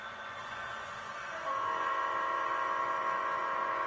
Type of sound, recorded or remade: remade